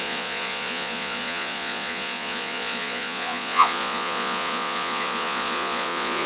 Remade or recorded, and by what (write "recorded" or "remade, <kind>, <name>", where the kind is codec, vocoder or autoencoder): remade, vocoder, Vocos